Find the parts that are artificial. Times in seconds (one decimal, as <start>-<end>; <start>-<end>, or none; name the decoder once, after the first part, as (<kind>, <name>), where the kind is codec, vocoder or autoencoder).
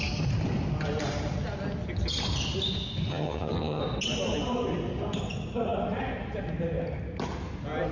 3.1-3.8 (vocoder, HiFi-GAN)